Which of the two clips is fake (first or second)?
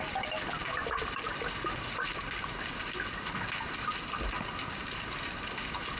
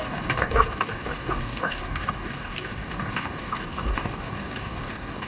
second